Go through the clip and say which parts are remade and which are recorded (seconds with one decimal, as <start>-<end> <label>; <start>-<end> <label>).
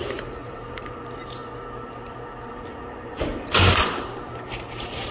0.0-1.4 remade; 1.4-2.5 recorded; 2.5-5.1 remade